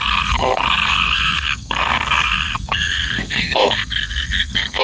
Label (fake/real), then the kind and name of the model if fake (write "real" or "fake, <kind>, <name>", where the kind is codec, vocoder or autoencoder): fake, codec, SNAC